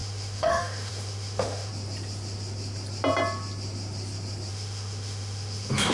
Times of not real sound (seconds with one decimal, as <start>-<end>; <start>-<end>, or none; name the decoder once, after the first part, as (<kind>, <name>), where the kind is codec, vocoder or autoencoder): 0.0-1.7 (autoencoder, DAC-VAE); 4.5-5.9